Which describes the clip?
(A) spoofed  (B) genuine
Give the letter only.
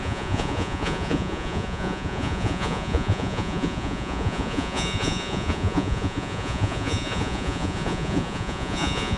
A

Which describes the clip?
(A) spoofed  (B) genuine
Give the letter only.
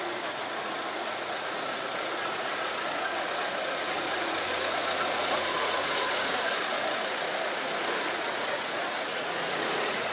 A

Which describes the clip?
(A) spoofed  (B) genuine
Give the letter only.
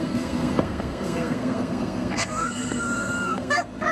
A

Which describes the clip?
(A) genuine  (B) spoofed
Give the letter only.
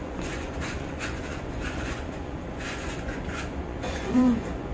B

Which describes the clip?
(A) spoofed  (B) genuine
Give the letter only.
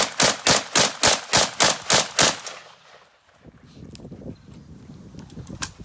B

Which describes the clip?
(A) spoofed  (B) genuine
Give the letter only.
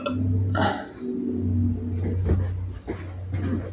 B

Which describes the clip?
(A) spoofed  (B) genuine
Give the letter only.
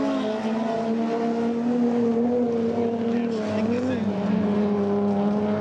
B